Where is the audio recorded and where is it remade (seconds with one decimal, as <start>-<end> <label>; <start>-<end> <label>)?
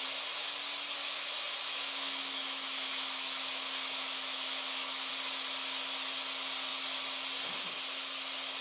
0.0-1.0 recorded; 1.0-5.1 remade; 5.1-8.6 recorded